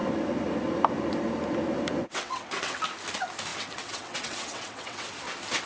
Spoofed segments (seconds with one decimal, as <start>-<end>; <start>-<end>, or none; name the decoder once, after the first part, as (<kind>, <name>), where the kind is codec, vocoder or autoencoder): 2.0-2.8 (vocoder, WaveNeXt); 3.5-5.1